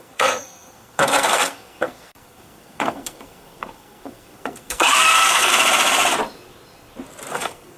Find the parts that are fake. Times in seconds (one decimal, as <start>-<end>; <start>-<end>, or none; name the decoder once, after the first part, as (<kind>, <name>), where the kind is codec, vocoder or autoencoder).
0.0-5.5 (codec, SNAC); 7.3-7.8